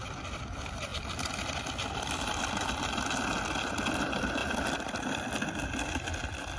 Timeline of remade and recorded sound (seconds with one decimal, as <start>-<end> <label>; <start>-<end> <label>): 0.0-6.6 recorded